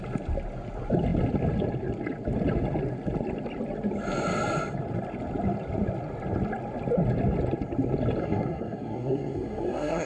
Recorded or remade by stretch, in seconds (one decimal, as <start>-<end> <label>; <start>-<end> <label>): 0.0-8.2 recorded; 8.2-10.1 remade